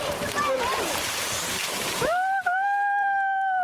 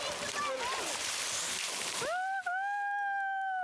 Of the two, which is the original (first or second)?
second